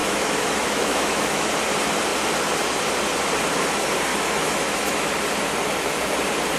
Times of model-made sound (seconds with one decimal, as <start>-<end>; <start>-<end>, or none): 0.0-1.5; 4.1-5.1